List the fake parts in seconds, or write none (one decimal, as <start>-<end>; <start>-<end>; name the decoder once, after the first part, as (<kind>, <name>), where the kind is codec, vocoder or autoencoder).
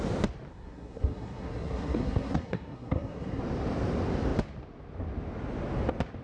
0.5-3.4 (codec, SNAC)